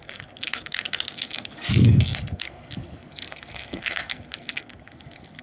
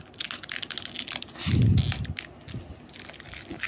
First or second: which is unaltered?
second